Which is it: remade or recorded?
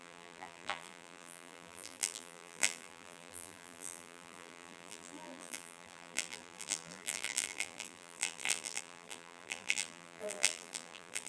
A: remade